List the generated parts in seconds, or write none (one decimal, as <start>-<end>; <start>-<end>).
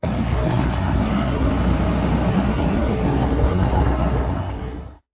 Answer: 0.0-1.5; 2.3-5.1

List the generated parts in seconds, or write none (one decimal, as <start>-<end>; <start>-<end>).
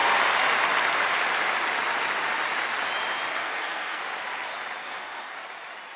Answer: 3.4-4.0; 4.8-5.4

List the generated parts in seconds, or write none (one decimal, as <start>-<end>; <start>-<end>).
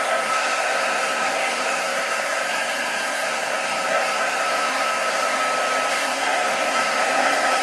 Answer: 0.0-5.4; 5.9-7.6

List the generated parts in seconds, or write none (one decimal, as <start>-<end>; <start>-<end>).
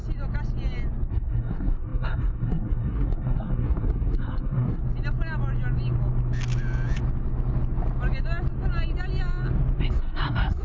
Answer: 1.1-4.8; 9.8-10.6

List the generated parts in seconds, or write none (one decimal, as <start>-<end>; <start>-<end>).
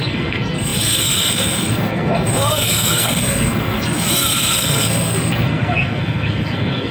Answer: 0.0-6.9